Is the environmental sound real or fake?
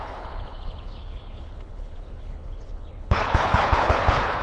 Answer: fake